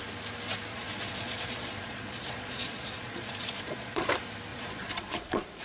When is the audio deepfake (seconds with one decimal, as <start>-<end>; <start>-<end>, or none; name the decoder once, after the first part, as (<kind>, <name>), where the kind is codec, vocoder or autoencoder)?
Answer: 0.7-4.1 (vocoder, Vocos); 4.5-5.6